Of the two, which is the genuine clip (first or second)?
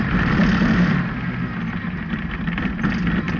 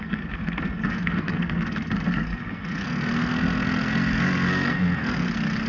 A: first